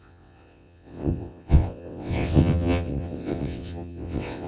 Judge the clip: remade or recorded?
remade